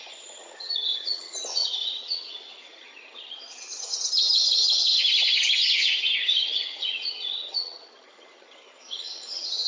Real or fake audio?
fake